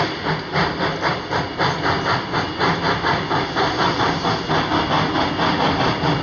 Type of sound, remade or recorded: recorded